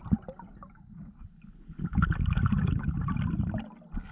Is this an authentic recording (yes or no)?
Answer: yes